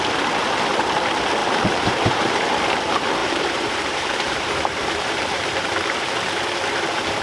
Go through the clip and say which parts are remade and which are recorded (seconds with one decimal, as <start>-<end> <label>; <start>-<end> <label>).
0.0-1.4 recorded; 1.4-2.5 remade; 2.5-3.2 recorded; 3.2-6.1 remade; 6.1-7.2 recorded

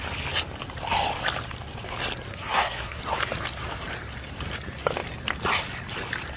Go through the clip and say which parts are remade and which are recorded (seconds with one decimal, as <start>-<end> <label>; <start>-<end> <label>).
0.0-2.3 recorded; 2.3-3.0 remade; 3.0-6.4 recorded

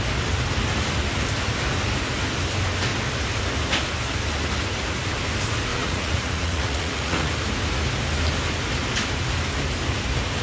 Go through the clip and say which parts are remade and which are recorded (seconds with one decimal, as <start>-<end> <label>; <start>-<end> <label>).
0.0-5.7 recorded; 5.7-7.3 remade; 7.3-10.4 recorded

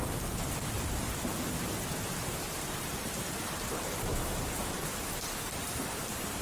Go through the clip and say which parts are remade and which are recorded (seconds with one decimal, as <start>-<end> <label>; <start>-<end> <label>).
0.0-2.9 recorded; 2.9-4.8 remade; 4.8-5.9 recorded; 5.9-6.4 remade

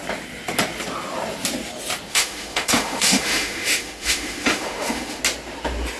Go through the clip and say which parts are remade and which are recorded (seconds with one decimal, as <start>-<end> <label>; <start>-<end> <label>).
0.0-2.1 recorded; 2.1-5.2 remade; 5.2-6.0 recorded